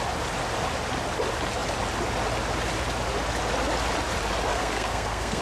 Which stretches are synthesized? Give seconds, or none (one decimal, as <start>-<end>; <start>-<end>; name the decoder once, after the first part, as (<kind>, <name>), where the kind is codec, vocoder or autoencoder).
4.5-5.4 (codec, SNAC)